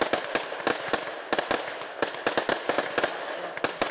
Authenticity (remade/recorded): recorded